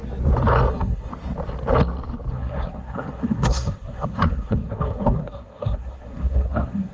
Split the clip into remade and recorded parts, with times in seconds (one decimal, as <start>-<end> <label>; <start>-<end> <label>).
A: 0.0-0.7 recorded; 0.7-1.1 remade; 1.1-2.3 recorded; 2.3-6.9 remade